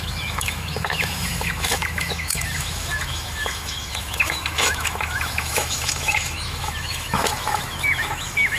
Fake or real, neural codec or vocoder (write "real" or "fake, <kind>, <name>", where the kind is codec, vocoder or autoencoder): fake, autoencoder, DAC-VAE